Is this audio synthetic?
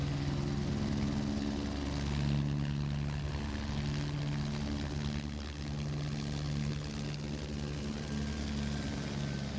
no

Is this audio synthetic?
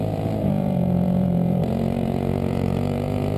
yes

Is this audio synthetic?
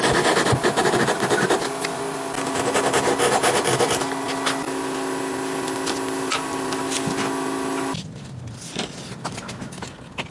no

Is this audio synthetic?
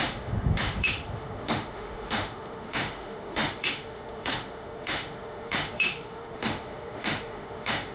yes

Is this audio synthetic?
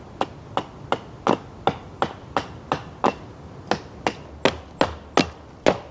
no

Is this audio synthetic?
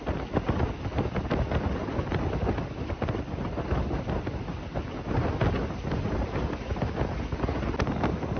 no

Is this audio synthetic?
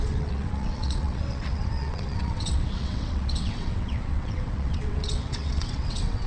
yes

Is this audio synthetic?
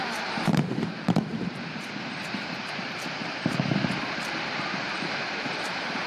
yes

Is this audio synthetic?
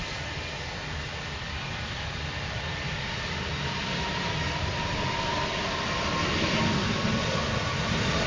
no